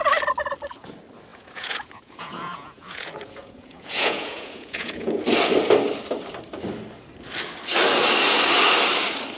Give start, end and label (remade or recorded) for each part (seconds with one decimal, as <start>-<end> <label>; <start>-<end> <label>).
0.0-1.3 recorded; 1.3-5.2 remade; 5.2-9.4 recorded